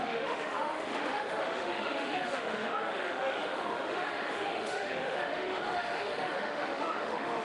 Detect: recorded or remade remade